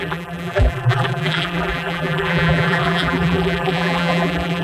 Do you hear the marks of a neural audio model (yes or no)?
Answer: yes